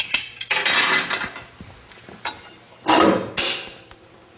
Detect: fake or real real